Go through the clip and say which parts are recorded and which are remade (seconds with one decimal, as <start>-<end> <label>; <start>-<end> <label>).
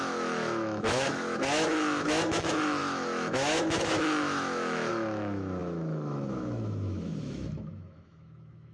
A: 0.0-8.7 remade